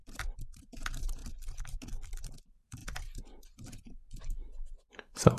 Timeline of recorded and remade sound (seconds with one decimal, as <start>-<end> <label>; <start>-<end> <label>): 0.0-1.2 remade; 1.2-2.1 recorded; 2.1-5.4 remade